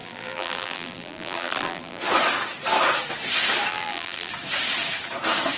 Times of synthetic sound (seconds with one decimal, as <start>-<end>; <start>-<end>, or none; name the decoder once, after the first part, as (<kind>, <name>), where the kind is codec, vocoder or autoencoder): 0.0-2.0 (vocoder, BigVGAN v2); 3.7-4.3